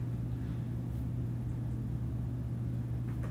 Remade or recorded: recorded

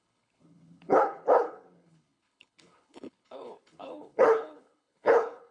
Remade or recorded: remade